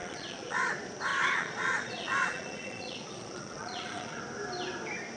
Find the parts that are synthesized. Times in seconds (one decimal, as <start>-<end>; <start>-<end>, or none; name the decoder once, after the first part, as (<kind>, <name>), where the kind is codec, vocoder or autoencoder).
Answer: 0.0-0.7 (vocoder, Vocos); 1.1-4.2